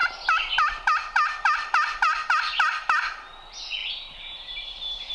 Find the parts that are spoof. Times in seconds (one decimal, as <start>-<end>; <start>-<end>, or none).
none